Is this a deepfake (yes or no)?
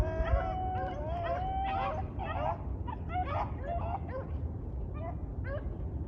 no